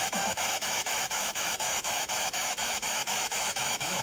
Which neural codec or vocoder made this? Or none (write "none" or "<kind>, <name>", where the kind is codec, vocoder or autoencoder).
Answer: autoencoder, DAC-VAE